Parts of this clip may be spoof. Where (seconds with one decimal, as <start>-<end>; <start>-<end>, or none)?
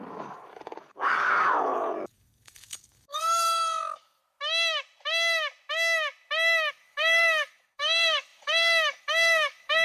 0.0-4.2; 6.7-9.8